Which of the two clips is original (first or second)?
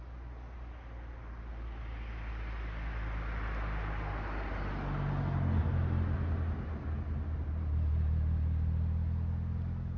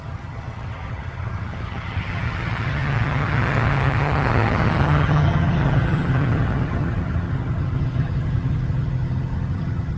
first